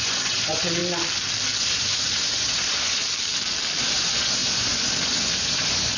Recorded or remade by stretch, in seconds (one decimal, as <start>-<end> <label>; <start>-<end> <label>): 0.0-0.8 remade; 0.8-1.6 recorded; 1.6-3.0 remade; 3.0-3.8 recorded; 3.8-6.0 remade